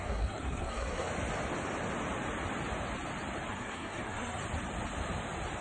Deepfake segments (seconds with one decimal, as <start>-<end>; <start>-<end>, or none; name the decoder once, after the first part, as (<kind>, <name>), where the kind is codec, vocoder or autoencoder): 0.0-1.1 (codec, SNAC); 3.5-4.4